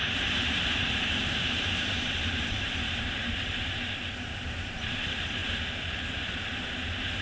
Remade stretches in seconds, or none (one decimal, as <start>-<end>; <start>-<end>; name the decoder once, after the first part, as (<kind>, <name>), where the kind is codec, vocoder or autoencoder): 0.0-5.4 (vocoder, BigVGAN v2); 6.4-7.2